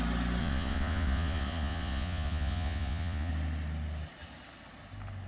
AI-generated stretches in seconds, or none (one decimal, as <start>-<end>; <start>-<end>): 0.4-3.3